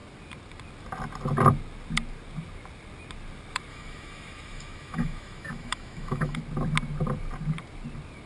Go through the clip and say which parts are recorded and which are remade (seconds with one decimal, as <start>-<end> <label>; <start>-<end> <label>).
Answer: 0.0-3.7 recorded; 3.7-6.4 remade; 6.4-8.3 recorded

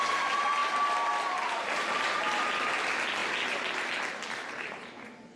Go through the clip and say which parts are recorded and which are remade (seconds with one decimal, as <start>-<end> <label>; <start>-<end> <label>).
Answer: 0.0-5.4 recorded

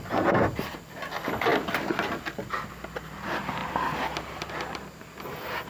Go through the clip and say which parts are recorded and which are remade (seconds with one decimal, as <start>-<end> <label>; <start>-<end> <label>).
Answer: 0.0-5.7 recorded

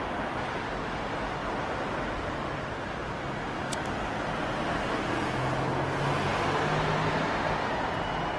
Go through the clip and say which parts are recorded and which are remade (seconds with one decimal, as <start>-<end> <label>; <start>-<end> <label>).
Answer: 0.0-8.4 recorded

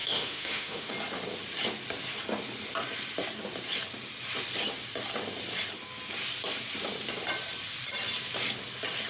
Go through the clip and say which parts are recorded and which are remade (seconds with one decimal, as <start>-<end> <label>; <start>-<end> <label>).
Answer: 0.0-0.9 remade; 0.9-9.1 recorded

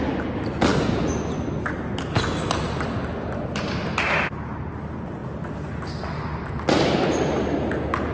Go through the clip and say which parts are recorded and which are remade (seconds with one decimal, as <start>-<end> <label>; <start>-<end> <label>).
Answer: 0.0-8.1 recorded

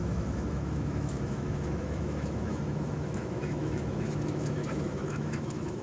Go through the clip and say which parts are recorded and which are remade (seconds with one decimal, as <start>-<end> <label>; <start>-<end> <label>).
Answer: 0.0-5.8 remade